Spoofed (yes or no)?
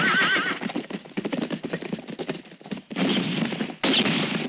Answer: no